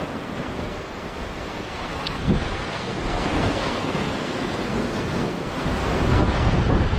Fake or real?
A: fake